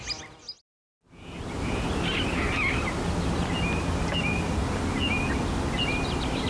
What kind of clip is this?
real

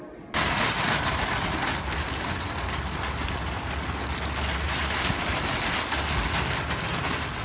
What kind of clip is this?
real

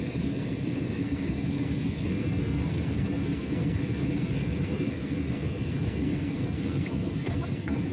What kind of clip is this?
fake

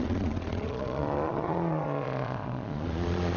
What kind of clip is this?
fake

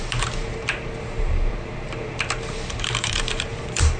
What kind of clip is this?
fake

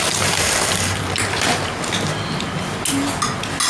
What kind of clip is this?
real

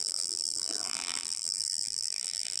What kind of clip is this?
fake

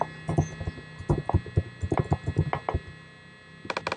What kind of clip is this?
real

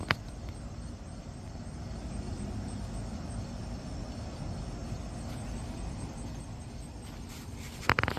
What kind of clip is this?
real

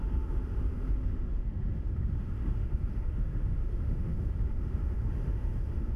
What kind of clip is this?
fake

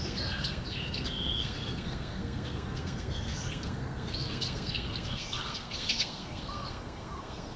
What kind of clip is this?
fake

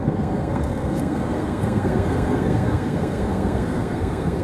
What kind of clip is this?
fake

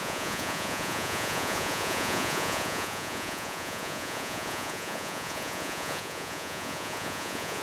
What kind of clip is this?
fake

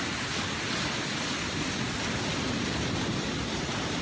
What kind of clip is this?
real